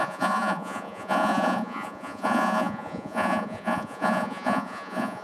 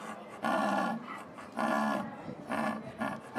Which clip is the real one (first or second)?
second